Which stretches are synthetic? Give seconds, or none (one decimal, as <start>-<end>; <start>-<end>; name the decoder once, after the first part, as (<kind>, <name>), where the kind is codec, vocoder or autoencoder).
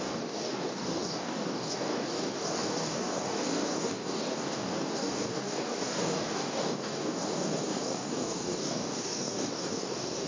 0.0-10.3 (codec, DAC)